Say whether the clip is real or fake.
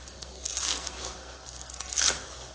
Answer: fake